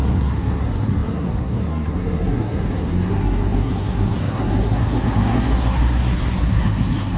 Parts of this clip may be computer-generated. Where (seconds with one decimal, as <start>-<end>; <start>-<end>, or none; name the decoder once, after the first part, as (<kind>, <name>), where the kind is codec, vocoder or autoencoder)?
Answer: 0.0-7.2 (codec, SNAC)